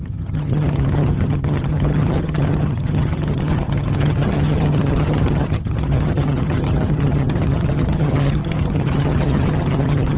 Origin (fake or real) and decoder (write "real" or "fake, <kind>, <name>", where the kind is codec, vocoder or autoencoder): fake, vocoder, HiFi-GAN